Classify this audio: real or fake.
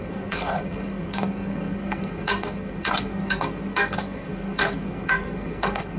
fake